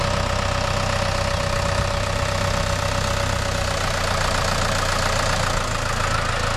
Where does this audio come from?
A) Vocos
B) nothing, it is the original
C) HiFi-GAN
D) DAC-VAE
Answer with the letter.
B